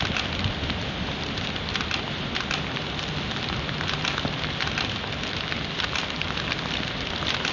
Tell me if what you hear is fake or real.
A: real